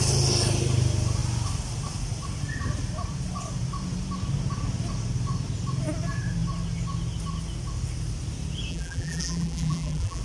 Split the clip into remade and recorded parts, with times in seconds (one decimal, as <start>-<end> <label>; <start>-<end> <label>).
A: 0.0-8.7 recorded; 8.7-10.2 remade